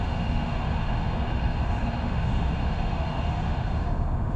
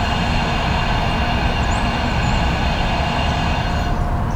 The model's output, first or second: first